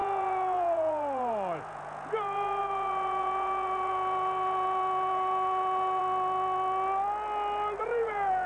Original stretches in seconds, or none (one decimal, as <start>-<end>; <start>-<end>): 6.0-7.8